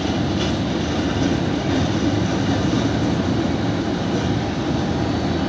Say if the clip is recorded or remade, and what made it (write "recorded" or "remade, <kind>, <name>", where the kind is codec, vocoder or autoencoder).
recorded